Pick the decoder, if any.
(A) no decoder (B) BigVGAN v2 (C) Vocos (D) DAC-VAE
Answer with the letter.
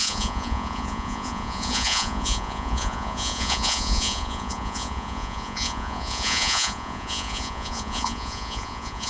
C